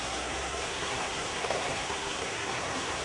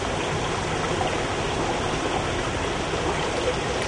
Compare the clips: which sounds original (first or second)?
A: second